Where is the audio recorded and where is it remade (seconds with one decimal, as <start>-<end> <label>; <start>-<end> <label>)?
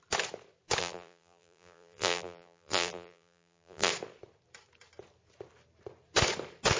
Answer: 0.0-0.8 recorded; 0.8-3.9 remade; 3.9-6.8 recorded